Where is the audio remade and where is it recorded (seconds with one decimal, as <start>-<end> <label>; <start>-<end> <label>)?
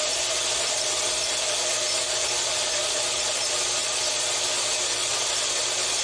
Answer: 0.0-6.0 recorded